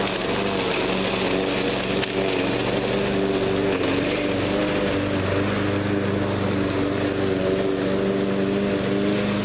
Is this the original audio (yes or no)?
yes